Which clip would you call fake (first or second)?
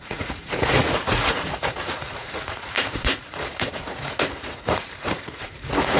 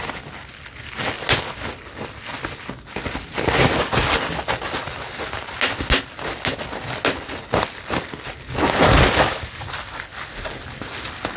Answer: first